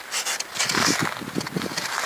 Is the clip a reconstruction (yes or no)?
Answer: no